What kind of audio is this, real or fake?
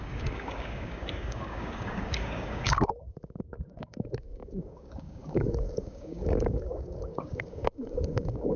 fake